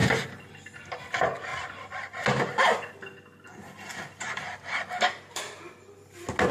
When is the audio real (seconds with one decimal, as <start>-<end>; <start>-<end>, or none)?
0.0-6.5

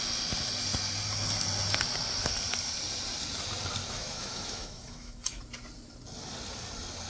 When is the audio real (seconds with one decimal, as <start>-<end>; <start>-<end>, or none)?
0.0-3.8; 5.4-7.1

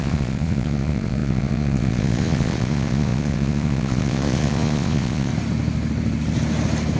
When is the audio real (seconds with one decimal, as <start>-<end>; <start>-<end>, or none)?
5.3-7.0

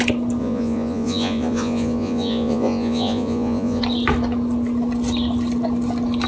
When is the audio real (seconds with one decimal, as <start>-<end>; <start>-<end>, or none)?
0.0-0.4; 3.8-6.3